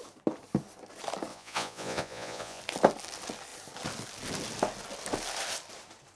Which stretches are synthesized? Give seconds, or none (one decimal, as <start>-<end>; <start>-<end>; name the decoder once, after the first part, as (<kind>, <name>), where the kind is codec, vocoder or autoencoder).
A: 1.3-2.6 (vocoder, Vocos)